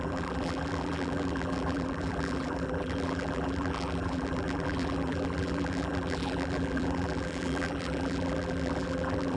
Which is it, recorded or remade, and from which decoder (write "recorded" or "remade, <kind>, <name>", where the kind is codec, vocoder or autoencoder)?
remade, vocoder, BigVGAN v2